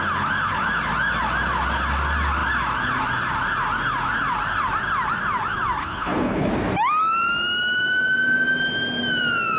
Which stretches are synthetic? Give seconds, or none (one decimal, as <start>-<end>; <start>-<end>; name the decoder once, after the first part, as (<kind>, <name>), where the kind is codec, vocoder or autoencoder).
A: 5.8-6.5 (codec, HILCodec)